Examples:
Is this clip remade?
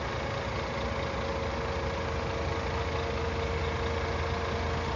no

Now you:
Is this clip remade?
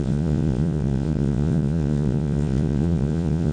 yes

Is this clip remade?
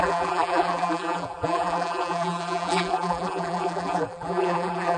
yes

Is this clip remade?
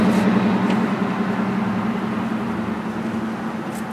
no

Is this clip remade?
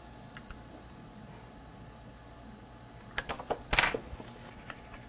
no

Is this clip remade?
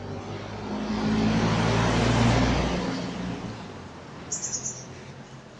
no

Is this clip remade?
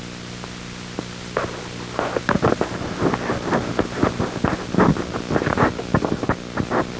no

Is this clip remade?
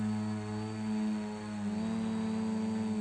no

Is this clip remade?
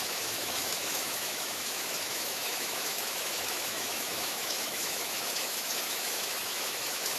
yes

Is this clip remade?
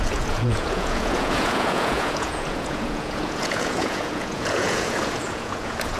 yes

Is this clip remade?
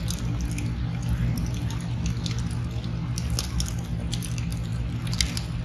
no